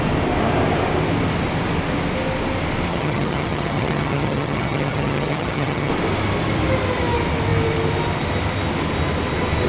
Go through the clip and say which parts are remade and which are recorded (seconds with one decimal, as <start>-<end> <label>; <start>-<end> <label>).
0.0-2.9 recorded; 2.9-5.9 remade; 5.9-9.7 recorded